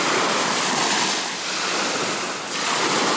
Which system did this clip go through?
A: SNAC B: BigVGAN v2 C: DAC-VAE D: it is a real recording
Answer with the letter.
D